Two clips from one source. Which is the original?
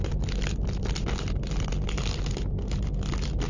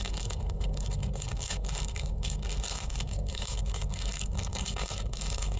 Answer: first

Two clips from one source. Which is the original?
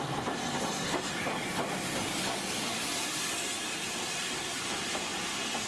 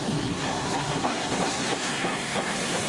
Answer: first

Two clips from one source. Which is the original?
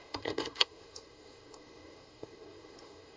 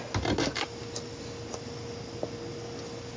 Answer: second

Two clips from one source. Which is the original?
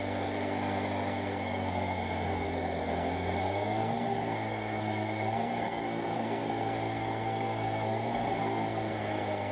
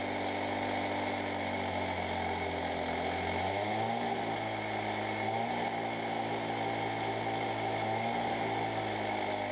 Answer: second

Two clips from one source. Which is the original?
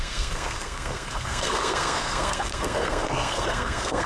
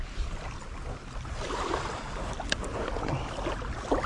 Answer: second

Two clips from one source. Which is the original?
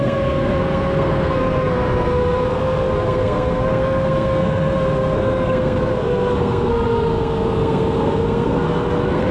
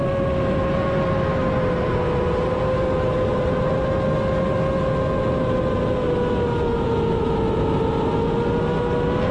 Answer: second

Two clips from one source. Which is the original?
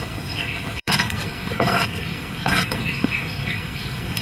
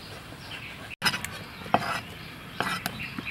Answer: second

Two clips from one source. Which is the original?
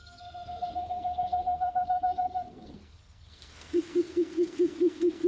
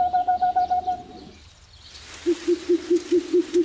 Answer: second